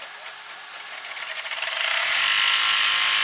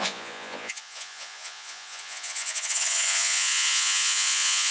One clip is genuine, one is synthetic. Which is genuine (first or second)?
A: first